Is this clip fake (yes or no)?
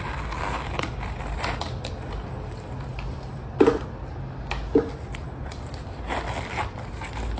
no